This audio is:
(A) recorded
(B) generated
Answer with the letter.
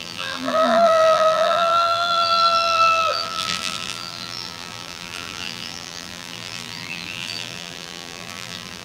B